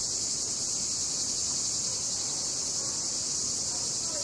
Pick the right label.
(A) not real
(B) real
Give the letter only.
B